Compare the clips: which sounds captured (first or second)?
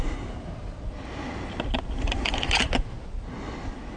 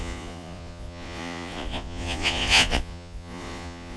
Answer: first